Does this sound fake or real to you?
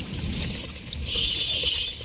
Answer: real